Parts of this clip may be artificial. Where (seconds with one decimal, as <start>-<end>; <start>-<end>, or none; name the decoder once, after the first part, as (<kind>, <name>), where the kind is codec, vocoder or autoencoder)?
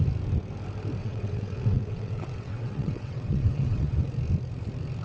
1.0-4.0 (vocoder, WaveNeXt)